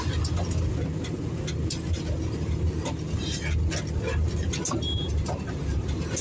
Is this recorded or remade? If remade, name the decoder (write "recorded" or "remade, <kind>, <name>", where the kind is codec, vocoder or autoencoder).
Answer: recorded